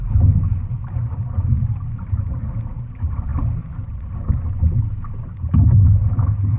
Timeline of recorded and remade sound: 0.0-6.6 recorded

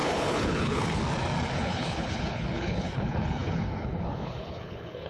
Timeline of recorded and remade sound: 0.0-1.0 remade; 1.0-1.5 recorded; 1.5-5.1 remade

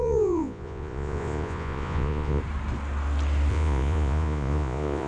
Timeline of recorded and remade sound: 0.0-2.4 remade; 2.4-3.5 recorded; 3.5-5.1 remade